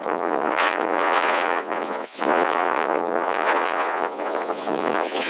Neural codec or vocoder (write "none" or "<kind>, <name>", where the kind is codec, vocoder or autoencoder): vocoder, Vocos